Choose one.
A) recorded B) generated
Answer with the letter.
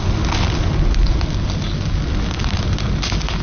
A